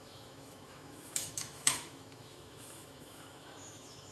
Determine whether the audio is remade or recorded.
remade